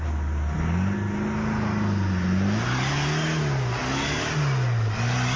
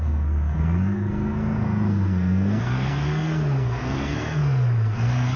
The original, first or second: first